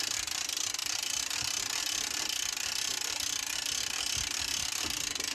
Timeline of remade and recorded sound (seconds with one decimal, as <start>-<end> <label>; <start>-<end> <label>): 0.0-0.8 recorded; 0.8-1.3 remade; 1.3-5.3 recorded